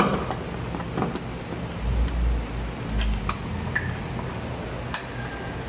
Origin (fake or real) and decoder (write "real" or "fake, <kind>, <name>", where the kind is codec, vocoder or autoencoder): real